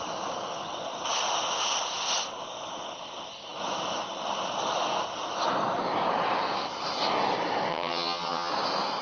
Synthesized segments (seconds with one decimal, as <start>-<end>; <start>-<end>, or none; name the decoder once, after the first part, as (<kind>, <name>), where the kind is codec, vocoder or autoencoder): 7.7-8.5 (vocoder, HiFi-GAN)